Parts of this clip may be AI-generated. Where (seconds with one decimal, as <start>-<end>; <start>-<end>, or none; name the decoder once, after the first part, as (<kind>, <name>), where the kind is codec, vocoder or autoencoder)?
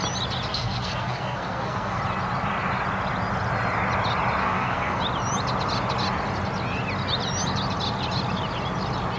0.5-2.0 (codec, SNAC); 4.4-5.0